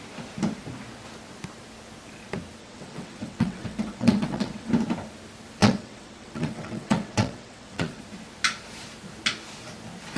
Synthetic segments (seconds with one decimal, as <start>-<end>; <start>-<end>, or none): 2.6-4.7; 5.6-8.0